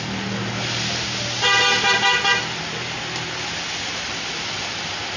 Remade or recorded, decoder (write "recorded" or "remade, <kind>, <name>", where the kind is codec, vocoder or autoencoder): recorded